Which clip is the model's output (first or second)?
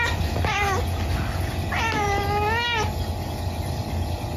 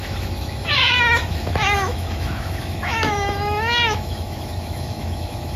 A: second